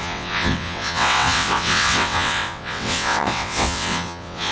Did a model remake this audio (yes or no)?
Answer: yes